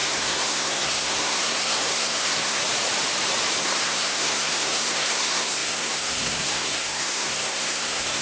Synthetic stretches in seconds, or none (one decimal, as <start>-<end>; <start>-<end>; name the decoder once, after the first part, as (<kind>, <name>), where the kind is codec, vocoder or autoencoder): 0.0-2.6 (codec, SNAC); 3.6-8.2